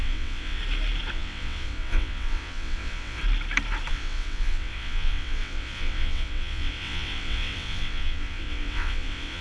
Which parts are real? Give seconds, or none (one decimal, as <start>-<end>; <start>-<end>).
0.6-1.1; 3.2-3.9